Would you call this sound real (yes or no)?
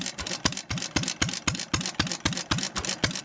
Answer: yes